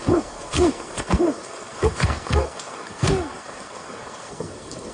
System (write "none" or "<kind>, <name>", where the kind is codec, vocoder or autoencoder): codec, SNAC